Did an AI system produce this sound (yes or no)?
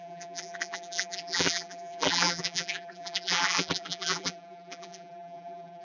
yes